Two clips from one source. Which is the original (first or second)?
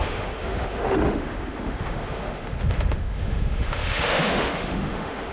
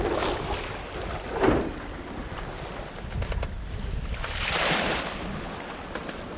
second